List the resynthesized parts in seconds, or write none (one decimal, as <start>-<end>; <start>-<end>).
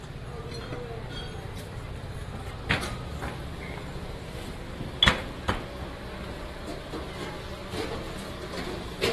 1.2-2.2